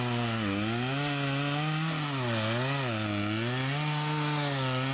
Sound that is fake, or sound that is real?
real